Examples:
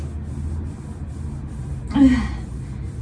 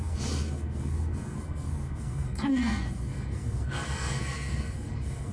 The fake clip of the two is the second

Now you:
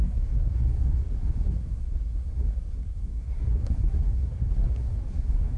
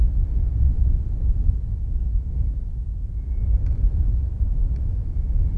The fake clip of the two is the first